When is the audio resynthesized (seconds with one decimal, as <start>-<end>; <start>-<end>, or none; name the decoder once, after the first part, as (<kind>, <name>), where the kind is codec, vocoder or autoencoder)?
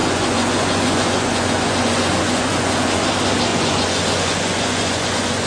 0.0-3.1 (vocoder, Vocos); 3.5-5.5